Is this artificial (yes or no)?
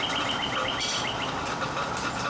no